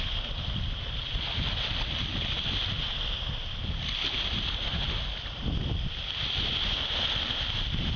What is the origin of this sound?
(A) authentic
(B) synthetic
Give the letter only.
A